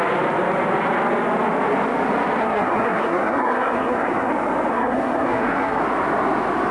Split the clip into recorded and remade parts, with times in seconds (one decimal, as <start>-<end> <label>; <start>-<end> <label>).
0.0-2.4 recorded; 2.4-4.3 remade; 4.3-4.7 recorded; 4.7-5.8 remade; 5.8-6.7 recorded